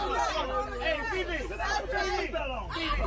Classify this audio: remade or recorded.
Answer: recorded